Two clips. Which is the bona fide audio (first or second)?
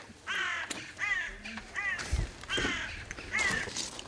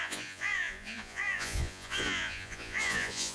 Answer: first